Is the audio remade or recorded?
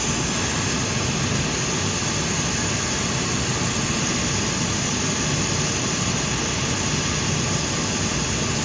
recorded